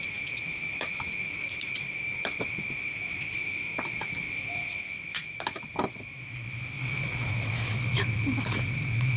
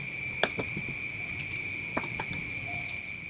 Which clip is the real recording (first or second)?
second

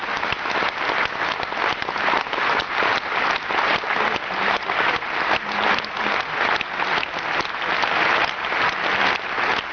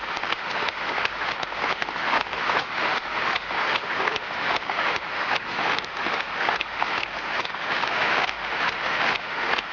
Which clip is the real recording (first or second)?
first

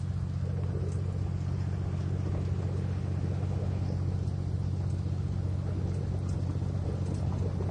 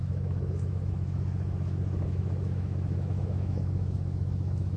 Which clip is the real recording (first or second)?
first